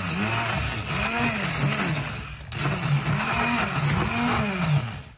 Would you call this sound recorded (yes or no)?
yes